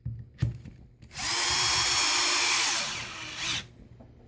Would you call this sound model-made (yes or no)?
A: no